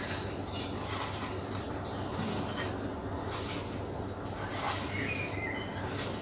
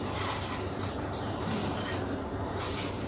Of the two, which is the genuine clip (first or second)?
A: first